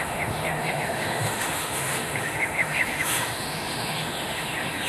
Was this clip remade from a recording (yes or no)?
yes